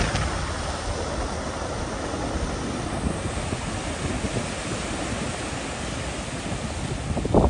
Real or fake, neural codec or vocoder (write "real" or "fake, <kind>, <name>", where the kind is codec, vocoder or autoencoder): real